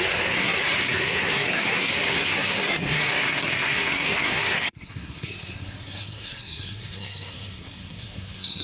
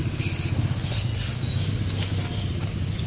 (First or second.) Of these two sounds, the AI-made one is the first